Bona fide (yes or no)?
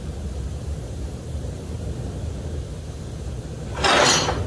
yes